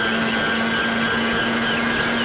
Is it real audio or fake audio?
real